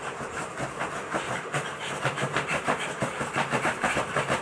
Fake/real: fake